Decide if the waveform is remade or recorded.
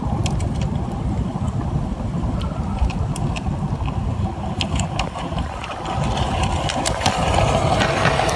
recorded